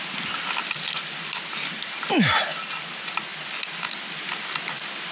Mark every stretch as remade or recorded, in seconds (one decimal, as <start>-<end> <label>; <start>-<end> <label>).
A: 0.0-5.1 recorded